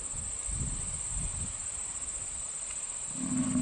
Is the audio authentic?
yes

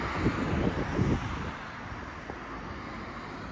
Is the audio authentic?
yes